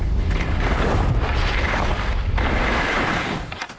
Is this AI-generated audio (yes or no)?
no